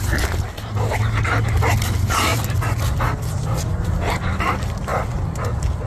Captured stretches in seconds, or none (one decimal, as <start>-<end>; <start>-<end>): 0.0-5.9

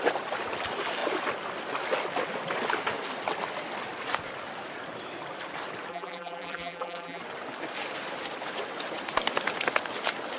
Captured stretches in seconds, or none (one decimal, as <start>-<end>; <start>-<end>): 0.0-5.9; 7.2-10.4

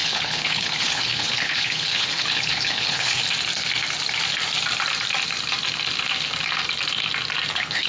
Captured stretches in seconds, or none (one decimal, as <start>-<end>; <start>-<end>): 3.2-7.5

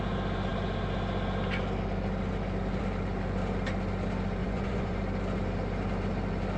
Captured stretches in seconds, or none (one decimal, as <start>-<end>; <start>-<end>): 0.0-4.4; 5.0-6.6

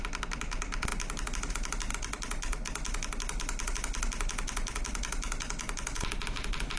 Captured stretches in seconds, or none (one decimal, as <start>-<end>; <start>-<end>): 0.0-6.8

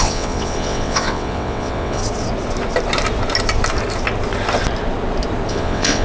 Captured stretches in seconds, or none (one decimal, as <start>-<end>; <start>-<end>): 2.0-5.5